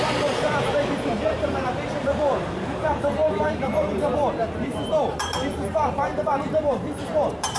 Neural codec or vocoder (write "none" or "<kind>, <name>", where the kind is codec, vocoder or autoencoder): vocoder, BigVGAN v2